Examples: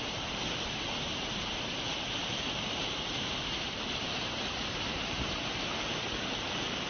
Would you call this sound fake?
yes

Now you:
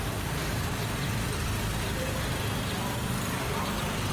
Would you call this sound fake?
no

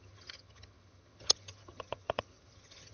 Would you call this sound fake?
yes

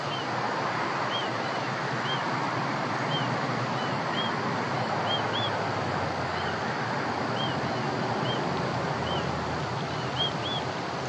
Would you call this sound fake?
no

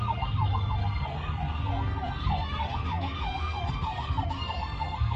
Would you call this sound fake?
yes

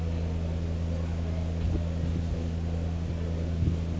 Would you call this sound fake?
no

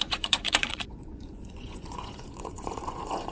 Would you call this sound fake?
yes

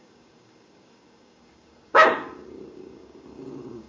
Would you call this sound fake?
yes